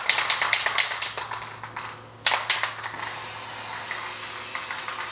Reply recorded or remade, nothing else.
recorded